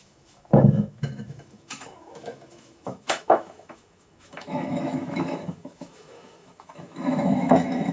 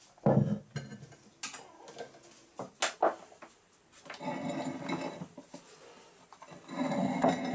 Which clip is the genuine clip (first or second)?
second